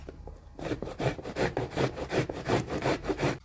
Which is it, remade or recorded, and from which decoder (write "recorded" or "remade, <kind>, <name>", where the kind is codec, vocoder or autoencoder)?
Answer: remade, vocoder, BigVGAN v2